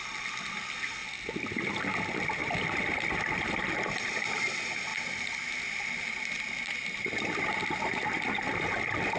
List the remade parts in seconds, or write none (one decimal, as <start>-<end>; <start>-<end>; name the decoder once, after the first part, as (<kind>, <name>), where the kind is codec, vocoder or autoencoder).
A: none